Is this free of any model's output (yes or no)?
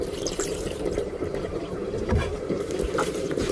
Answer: no